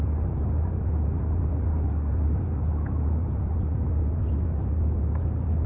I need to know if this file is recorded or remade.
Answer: recorded